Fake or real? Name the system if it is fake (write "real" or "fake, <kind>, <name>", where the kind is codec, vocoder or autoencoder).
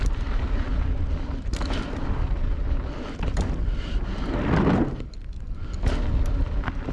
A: real